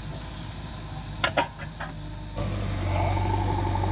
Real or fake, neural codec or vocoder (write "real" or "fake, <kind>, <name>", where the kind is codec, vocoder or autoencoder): real